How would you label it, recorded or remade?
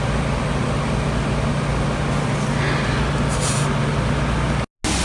recorded